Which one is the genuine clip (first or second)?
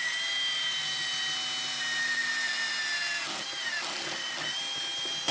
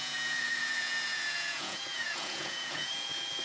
first